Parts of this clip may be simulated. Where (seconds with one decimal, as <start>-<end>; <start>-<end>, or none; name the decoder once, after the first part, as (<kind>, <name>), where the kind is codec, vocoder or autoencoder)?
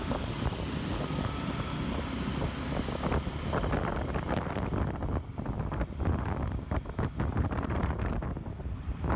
7.3-8.1 (vocoder, BigVGAN v2)